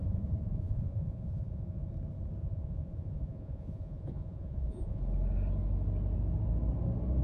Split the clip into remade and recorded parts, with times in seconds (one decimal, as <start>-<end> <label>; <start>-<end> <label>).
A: 0.0-1.9 remade; 1.9-2.4 recorded; 2.4-5.0 remade; 5.0-7.2 recorded